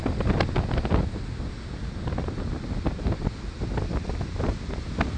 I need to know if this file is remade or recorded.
recorded